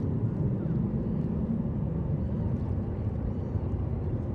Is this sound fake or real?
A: real